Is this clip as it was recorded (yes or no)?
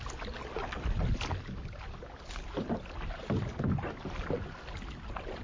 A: yes